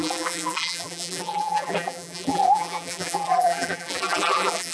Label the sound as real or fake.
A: fake